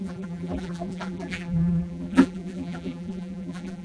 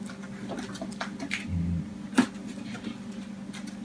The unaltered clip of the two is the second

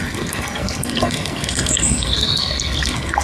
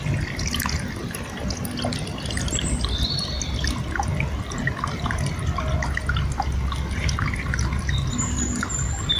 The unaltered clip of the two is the second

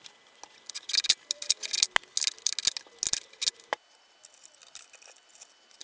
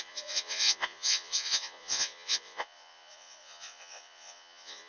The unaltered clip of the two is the first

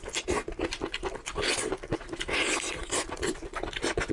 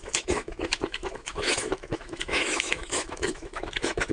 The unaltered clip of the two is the first